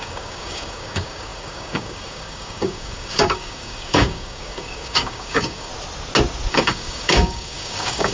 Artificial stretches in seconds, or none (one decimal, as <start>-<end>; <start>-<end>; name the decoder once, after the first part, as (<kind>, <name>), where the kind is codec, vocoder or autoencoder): 0.0-5.7 (codec, DAC); 6.5-8.1